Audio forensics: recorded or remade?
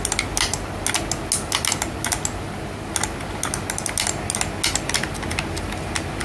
recorded